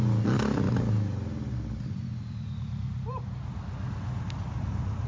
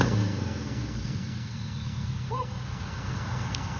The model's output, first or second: second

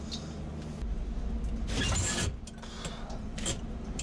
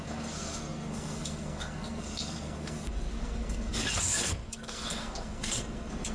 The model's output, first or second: second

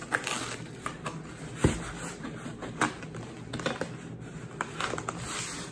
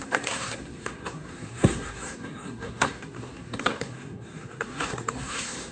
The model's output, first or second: second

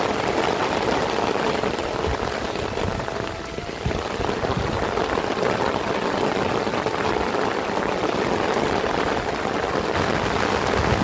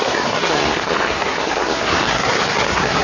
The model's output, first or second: second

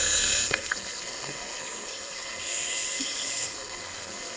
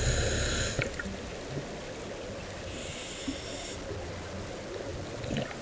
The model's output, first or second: first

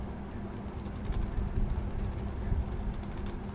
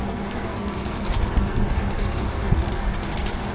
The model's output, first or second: second